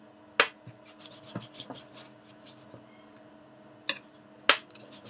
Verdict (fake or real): real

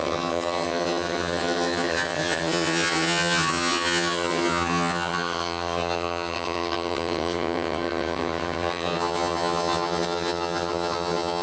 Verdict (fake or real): fake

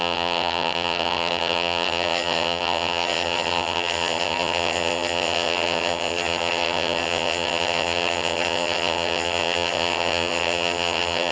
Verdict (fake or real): fake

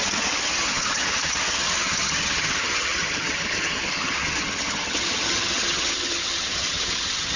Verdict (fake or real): fake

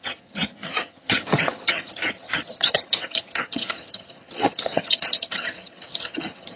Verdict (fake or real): fake